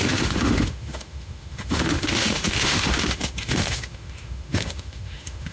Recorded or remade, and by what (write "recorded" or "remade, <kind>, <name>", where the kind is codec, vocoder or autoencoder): remade, autoencoder, DAC-VAE